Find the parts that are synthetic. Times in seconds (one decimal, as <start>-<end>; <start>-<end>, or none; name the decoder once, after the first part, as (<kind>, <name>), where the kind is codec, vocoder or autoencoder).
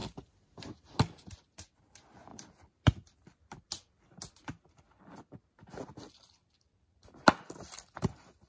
0.0-1.0 (vocoder, BigVGAN v2); 2.3-4.2